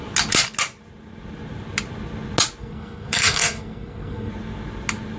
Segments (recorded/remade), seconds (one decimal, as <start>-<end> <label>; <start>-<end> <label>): 0.0-2.6 recorded; 2.6-4.3 remade; 4.3-5.2 recorded